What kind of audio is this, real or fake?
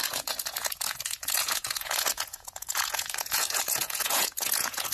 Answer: fake